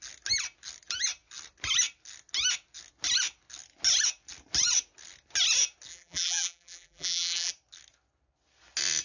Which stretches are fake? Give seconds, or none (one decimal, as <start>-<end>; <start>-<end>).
5.9-7.5